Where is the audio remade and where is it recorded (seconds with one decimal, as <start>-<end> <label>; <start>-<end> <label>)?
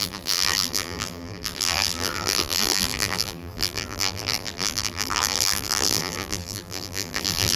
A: 0.0-7.6 remade